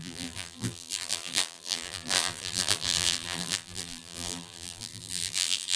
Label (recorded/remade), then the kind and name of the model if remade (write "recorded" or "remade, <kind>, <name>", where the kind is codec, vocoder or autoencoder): remade, vocoder, BigVGAN v2